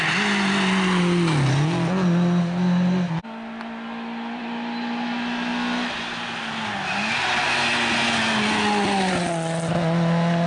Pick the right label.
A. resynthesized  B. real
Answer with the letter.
B